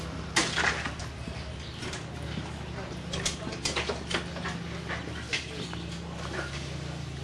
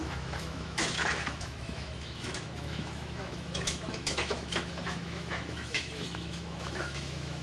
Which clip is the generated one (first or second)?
second